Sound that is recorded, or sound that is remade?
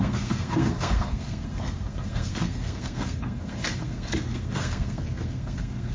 remade